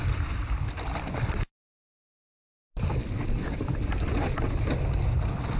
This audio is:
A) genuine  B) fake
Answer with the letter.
A